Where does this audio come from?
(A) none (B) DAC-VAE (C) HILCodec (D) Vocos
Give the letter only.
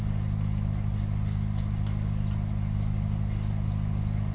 A